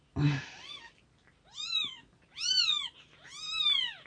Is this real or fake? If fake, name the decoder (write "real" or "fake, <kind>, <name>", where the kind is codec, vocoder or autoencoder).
real